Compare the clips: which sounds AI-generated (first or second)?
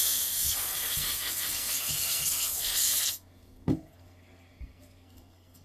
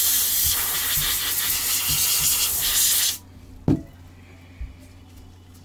first